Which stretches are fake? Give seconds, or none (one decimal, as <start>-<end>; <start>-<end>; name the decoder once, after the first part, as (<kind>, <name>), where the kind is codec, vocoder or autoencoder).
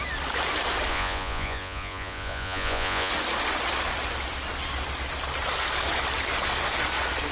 0.9-3.1 (vocoder, Vocos)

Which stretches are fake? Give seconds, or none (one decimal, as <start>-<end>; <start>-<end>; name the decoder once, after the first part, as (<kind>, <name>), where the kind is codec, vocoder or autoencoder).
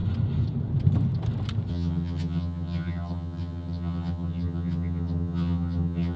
1.7-6.2 (vocoder, HiFi-GAN)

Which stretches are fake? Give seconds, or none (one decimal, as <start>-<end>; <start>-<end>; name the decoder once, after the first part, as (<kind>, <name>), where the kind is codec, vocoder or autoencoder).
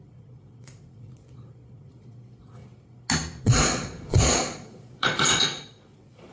0.0-2.6 (vocoder, Vocos); 3.4-6.3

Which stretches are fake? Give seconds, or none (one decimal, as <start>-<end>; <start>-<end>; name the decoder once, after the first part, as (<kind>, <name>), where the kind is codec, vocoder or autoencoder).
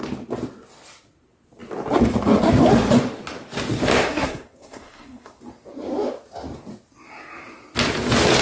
4.0-5.4 (codec, SNAC)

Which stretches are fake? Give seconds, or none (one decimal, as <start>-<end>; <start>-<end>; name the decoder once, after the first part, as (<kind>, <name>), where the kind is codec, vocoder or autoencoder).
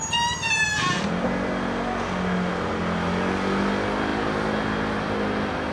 none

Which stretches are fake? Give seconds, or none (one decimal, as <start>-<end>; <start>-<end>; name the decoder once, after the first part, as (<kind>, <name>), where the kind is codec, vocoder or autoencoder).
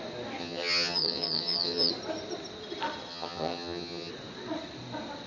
0.4-1.9 (vocoder, HiFi-GAN); 3.1-4.1